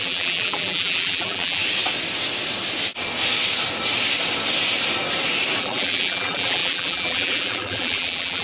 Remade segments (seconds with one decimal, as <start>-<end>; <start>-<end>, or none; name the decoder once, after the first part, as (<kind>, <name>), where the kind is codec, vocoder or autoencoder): 0.0-1.6 (vocoder, BigVGAN v2); 5.6-8.4